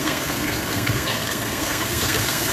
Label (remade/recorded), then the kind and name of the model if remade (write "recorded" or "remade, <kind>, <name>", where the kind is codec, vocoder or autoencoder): remade, codec, SNAC